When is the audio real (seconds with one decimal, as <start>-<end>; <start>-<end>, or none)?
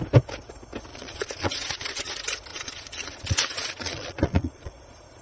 0.0-0.9; 2.1-2.5; 4.7-5.2